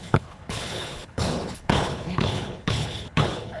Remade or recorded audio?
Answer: remade